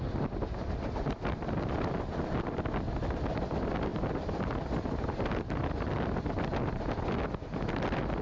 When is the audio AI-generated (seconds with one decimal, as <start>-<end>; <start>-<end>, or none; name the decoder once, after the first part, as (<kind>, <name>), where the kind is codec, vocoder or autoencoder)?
none